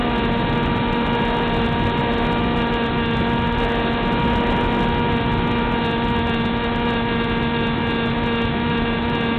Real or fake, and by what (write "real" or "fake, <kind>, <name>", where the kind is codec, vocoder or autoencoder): real